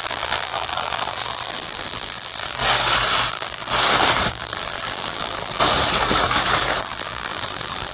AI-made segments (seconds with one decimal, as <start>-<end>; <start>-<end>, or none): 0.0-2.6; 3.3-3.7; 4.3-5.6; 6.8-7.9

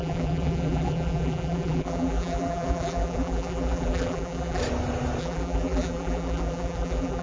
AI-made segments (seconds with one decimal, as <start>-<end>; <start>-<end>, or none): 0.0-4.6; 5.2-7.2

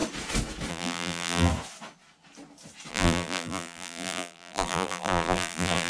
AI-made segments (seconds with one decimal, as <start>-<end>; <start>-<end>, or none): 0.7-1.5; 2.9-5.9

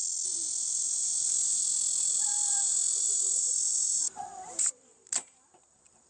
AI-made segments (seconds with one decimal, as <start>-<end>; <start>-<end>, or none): 0.6-1.6; 2.3-6.1

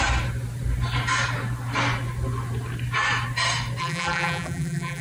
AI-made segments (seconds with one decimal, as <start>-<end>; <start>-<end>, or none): 3.8-5.0

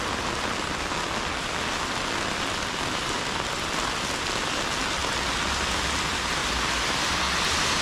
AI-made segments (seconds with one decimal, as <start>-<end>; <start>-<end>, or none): 5.0-6.0; 6.4-7.8

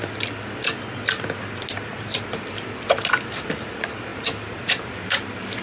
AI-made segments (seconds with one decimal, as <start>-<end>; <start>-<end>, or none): 1.9-3.1; 4.1-5.6